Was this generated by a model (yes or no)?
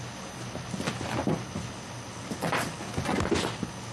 no